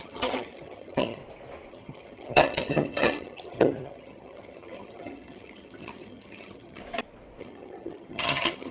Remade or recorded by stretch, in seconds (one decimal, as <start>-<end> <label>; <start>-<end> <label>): 0.0-1.2 remade; 1.2-1.7 recorded; 1.7-6.8 remade; 6.8-7.4 recorded; 7.4-8.7 remade